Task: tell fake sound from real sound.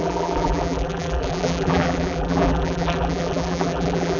fake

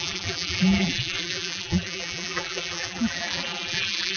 fake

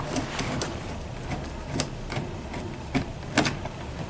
real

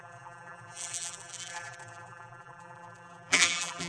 fake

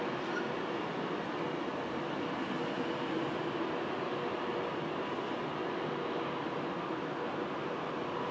real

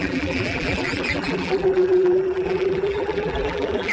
fake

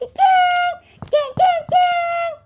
real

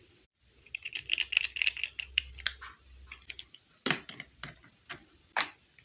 real